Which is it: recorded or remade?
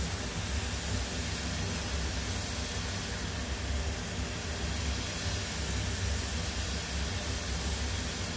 recorded